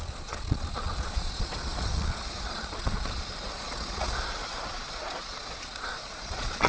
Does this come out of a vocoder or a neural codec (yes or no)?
yes